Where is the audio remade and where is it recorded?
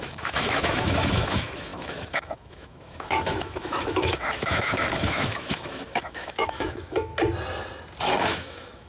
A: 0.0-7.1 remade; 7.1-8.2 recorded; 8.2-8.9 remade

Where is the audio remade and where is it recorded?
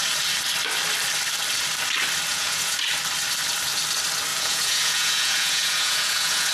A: 0.0-2.3 recorded; 2.3-2.8 remade; 2.8-4.3 recorded; 4.3-6.5 remade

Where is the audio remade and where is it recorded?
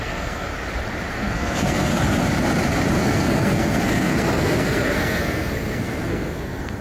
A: 0.0-0.5 remade; 0.5-1.1 recorded; 1.1-1.9 remade; 1.9-3.0 recorded; 3.0-6.8 remade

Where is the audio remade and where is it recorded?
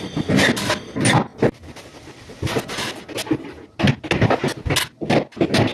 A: 0.0-5.7 recorded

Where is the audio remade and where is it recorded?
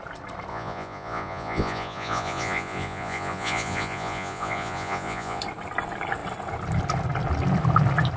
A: 0.0-0.5 recorded; 0.5-5.4 remade; 5.4-8.2 recorded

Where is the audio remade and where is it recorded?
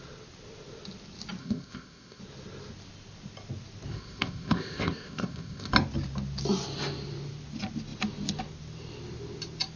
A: 0.0-1.4 recorded; 1.4-2.2 remade; 2.2-3.9 recorded; 3.9-5.7 remade; 5.7-9.8 recorded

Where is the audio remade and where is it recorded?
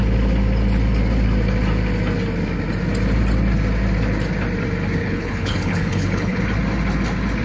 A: 0.0-5.0 recorded; 5.0-6.4 remade; 6.4-7.4 recorded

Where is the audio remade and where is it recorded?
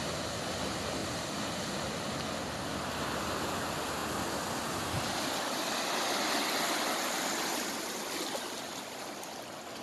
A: 0.0-1.0 recorded; 1.0-1.7 remade; 1.7-9.8 recorded